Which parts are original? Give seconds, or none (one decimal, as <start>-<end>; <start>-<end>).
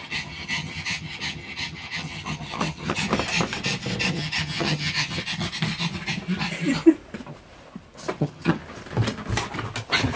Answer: 3.1-4.1; 5.2-8.2; 8.6-10.2